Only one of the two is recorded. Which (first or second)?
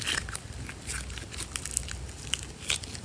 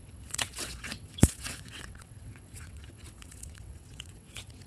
first